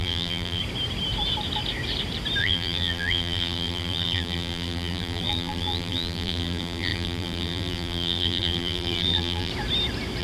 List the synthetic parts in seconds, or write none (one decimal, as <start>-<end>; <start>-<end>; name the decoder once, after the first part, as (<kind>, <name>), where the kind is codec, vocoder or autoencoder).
0.0-0.6 (vocoder, BigVGAN v2); 2.4-9.5